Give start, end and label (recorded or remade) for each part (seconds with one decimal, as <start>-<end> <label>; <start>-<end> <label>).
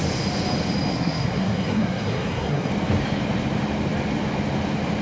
0.0-0.9 recorded; 0.9-2.7 remade; 2.7-5.0 recorded